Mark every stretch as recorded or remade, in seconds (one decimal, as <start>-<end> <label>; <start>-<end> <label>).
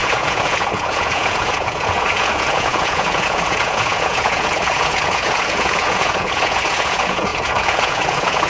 0.0-8.5 remade